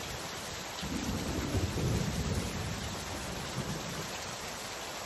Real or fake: fake